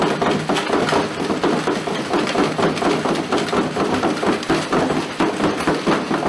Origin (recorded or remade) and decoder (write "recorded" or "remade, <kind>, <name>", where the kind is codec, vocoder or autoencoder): recorded